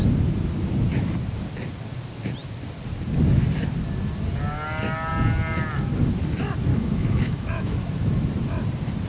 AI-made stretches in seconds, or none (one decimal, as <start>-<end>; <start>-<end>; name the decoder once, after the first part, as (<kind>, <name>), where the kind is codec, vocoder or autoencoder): 6.7-8.3 (autoencoder, DAC-VAE)